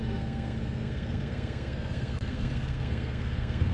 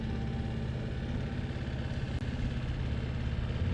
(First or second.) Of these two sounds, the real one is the second